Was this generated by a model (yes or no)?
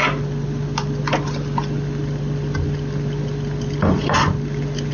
no